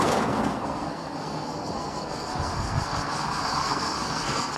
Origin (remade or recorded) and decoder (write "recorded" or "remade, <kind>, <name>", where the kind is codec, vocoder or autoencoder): remade, codec, SNAC